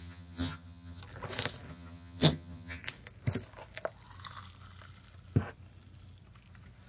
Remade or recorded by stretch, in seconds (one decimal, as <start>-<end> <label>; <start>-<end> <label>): 0.0-1.0 remade; 1.0-1.7 recorded; 1.7-2.8 remade; 2.8-6.9 recorded